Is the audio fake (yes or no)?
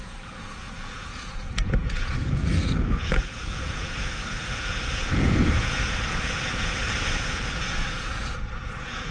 yes